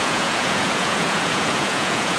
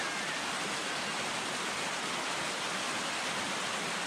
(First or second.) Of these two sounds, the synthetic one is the first